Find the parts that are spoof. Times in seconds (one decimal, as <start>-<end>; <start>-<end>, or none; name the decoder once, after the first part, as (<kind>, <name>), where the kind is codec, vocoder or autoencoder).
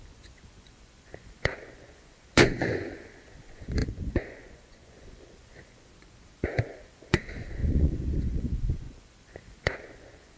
0.0-10.4 (vocoder, Vocos)